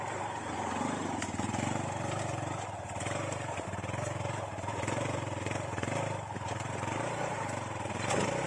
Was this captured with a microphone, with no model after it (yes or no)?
no